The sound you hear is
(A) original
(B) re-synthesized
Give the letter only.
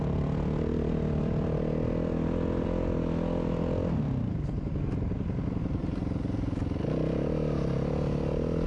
A